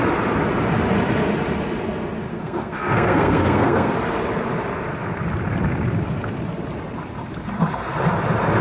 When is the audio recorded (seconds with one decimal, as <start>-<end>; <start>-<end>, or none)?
0.0-2.3; 3.9-8.6